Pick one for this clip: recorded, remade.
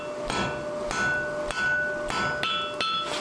recorded